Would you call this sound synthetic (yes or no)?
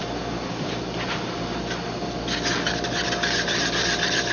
no